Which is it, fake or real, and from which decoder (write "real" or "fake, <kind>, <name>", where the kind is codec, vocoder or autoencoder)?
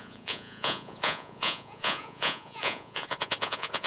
fake, vocoder, Vocos